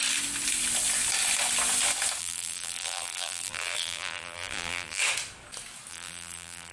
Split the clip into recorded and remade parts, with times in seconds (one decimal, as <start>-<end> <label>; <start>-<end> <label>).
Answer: 0.0-2.2 recorded; 2.2-5.0 remade; 5.0-5.9 recorded; 5.9-6.7 remade